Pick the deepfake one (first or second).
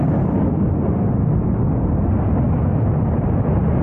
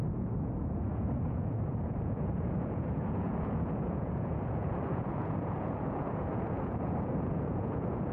second